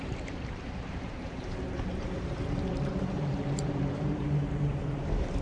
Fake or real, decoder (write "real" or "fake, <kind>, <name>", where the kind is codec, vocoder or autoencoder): fake, vocoder, BigVGAN v2